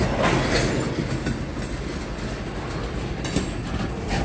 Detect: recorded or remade recorded